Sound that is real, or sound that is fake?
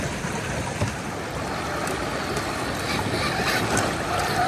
real